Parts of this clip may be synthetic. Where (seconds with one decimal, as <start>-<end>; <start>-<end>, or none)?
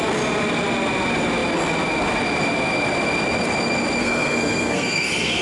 4.0-5.4